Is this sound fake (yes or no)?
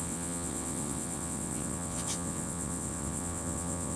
yes